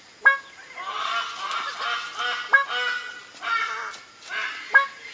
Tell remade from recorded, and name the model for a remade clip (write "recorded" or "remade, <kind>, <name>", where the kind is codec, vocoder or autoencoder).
recorded